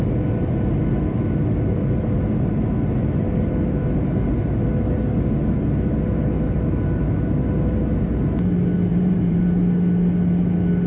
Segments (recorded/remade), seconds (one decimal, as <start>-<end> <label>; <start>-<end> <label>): 0.0-1.7 recorded; 1.7-2.7 remade; 2.7-8.9 recorded; 8.9-9.4 remade; 9.4-10.9 recorded